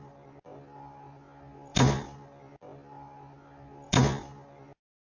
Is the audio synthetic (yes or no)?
no